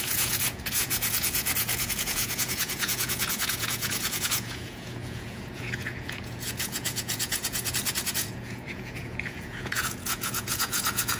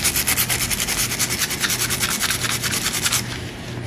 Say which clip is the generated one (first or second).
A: first